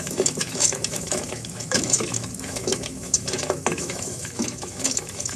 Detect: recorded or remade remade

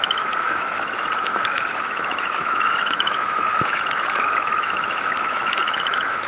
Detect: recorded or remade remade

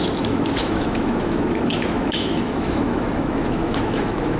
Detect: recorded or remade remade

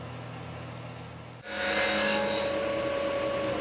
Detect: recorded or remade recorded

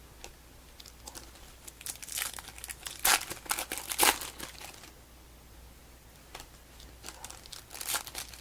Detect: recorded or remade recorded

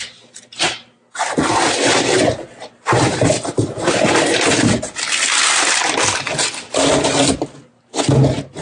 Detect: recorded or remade recorded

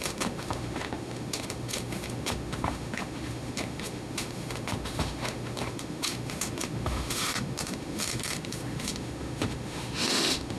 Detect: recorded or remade remade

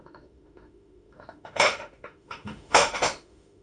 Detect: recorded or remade remade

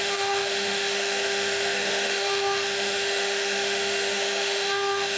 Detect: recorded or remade remade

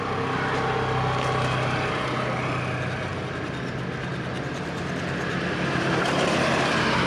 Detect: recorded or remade recorded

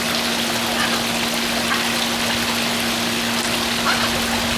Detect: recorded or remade recorded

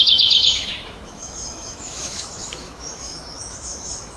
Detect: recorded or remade remade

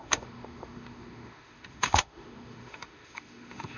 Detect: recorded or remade remade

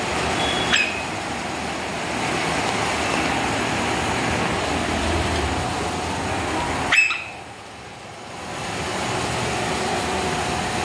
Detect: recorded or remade recorded